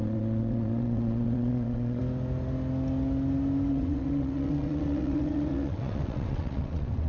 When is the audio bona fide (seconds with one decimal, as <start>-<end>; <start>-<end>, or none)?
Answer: 2.0-3.7